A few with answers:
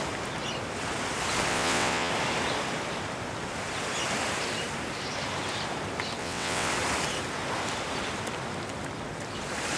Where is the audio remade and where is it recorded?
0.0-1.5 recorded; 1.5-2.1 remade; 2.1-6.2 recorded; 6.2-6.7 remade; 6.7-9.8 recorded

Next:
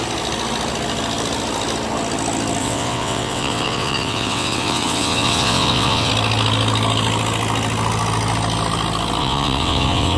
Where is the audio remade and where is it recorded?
0.0-2.6 recorded; 2.6-6.1 remade; 6.1-9.2 recorded; 9.2-10.2 remade